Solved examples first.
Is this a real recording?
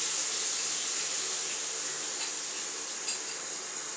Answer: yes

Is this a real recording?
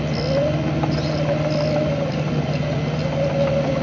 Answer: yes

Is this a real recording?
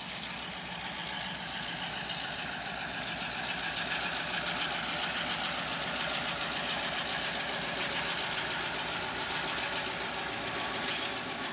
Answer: yes